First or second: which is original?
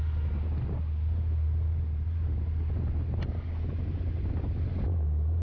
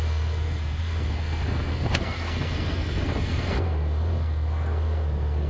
first